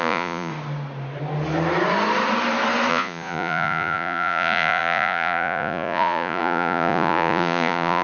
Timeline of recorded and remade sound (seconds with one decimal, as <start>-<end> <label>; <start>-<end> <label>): 0.0-0.5 remade; 0.5-2.9 recorded; 2.9-8.0 remade